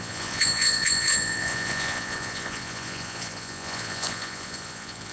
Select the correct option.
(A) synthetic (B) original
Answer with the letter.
A